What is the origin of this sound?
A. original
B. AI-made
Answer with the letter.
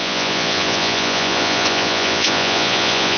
B